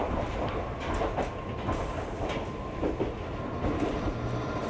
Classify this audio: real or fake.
real